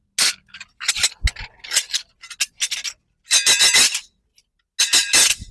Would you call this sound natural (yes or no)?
yes